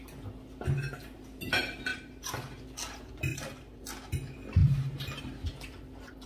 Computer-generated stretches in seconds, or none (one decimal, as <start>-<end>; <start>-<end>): 1.9-2.6; 3.3-3.8; 4.6-5.2